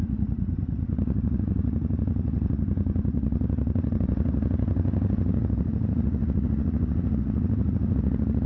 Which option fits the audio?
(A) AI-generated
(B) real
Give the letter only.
A